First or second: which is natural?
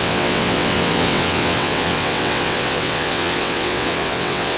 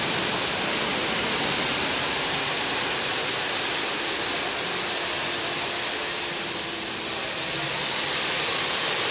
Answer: second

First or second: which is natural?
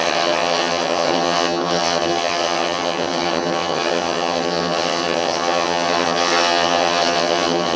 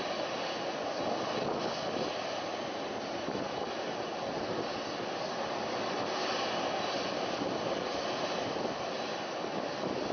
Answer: second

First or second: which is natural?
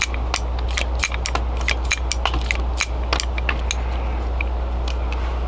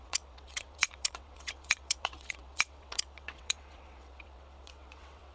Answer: first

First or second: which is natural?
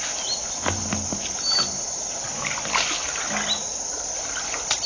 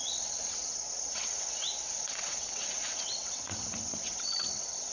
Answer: first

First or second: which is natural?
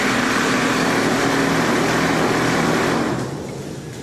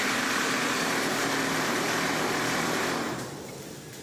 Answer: first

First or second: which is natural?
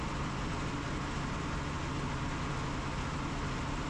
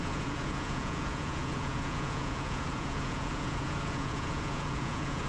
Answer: first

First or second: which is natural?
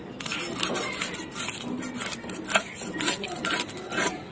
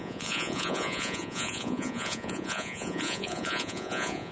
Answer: first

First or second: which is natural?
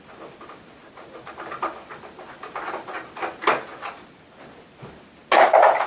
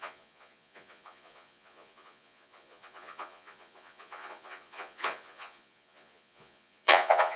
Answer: first